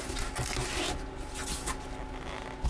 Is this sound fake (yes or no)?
no